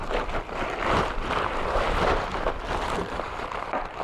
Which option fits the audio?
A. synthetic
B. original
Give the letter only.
A